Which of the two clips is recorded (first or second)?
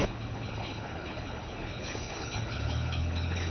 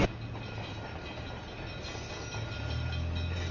second